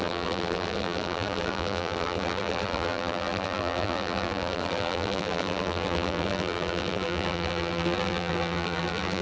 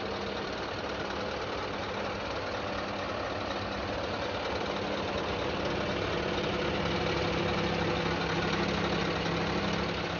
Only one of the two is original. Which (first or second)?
second